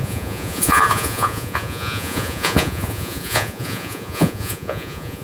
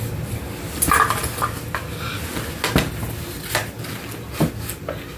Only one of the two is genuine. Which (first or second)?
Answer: second